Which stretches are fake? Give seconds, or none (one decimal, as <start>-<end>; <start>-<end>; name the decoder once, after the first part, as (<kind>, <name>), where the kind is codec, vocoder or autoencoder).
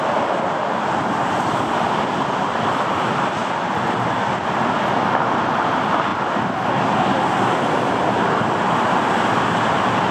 none